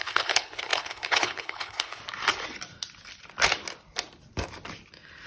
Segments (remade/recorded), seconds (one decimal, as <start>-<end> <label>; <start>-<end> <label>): 0.0-2.0 remade; 2.0-5.3 recorded